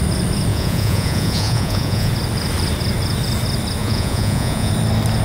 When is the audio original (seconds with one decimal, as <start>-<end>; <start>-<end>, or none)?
0.0-0.5; 2.1-3.8; 4.7-5.2